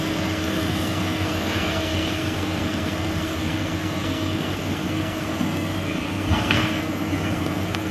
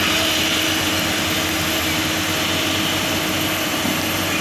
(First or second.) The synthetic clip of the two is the first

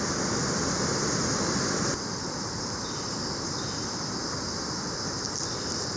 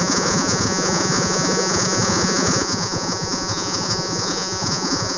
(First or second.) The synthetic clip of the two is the second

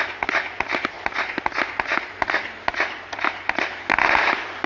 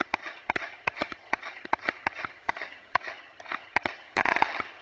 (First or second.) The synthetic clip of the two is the second